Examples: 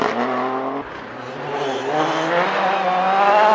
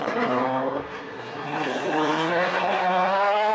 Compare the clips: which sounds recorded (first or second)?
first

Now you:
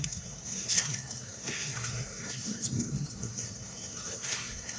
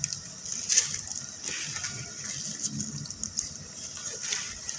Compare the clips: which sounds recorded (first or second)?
second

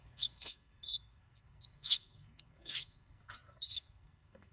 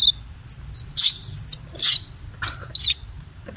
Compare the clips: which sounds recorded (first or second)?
second